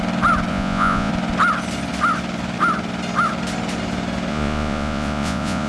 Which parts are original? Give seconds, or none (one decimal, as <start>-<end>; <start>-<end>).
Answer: 0.0-0.5; 1.1-4.3